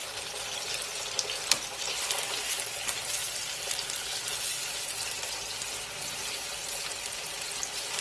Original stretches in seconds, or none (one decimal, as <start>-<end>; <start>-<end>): 0.0-8.0